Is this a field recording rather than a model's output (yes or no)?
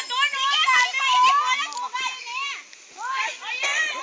yes